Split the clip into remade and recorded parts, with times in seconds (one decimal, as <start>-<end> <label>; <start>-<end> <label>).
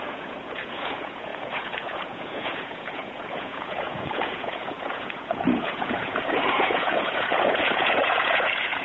0.0-8.8 remade